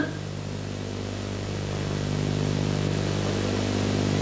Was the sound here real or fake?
real